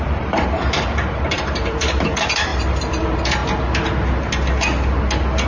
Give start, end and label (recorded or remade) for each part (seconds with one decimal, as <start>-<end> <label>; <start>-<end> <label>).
0.0-3.4 remade; 3.4-5.5 recorded